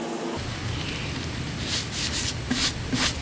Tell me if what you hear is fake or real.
real